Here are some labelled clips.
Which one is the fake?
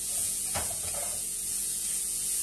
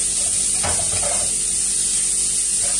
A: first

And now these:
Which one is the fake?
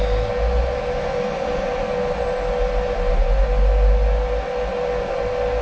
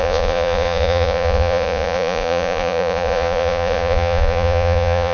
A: second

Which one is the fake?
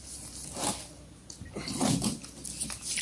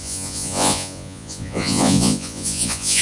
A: second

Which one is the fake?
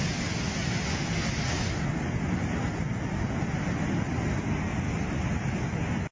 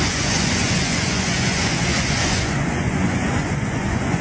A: second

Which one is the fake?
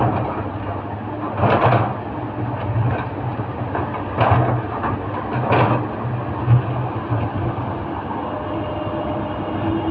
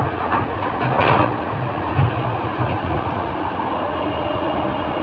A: second